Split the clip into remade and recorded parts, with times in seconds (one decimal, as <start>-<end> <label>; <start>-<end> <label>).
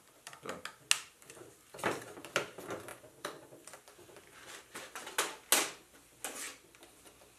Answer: 0.0-2.9 recorded; 2.9-3.8 remade; 3.8-6.5 recorded; 6.5-7.0 remade; 7.0-7.4 recorded